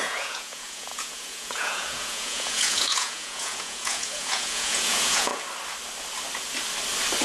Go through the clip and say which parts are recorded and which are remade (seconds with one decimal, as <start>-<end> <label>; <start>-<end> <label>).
0.0-5.3 remade; 5.3-7.2 recorded